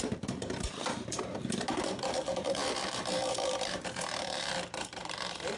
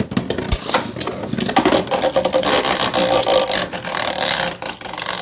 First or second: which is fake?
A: first